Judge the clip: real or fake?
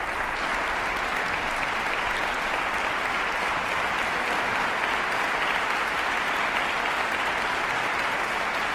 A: real